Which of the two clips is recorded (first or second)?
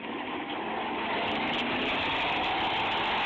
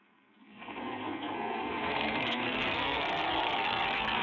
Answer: first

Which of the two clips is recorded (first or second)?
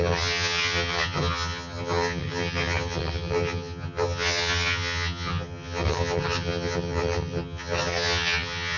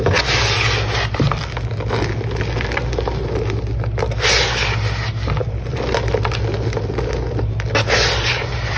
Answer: second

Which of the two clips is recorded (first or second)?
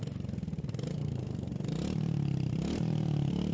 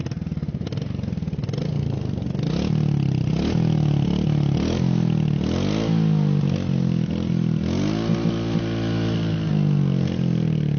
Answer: second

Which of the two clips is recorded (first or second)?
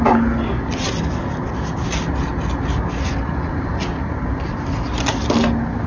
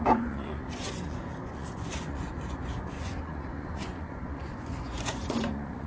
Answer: first